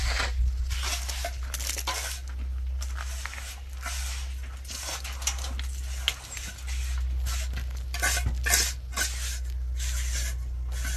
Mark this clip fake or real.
real